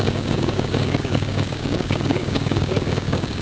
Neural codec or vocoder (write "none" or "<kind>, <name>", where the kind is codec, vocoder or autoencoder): codec, DAC